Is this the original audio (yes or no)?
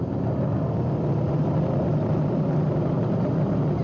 yes